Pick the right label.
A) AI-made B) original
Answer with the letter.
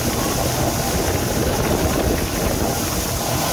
B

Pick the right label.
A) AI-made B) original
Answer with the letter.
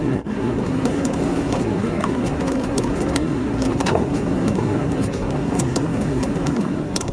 A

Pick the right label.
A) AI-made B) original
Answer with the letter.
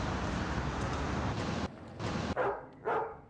B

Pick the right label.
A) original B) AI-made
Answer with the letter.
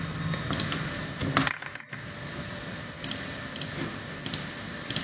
A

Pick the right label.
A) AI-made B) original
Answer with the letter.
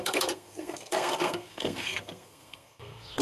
A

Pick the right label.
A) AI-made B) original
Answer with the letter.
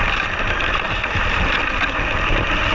B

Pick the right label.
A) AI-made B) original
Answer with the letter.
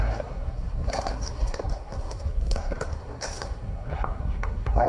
A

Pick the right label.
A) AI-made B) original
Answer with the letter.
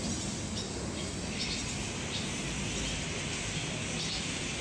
B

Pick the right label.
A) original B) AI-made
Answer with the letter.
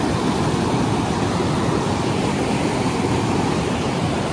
A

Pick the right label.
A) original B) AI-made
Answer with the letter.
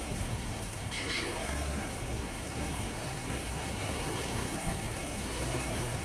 B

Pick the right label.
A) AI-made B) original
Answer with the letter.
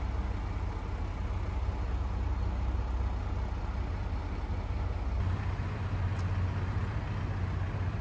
B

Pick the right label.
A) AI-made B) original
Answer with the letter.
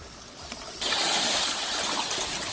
B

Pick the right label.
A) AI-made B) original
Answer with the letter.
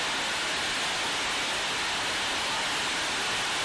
B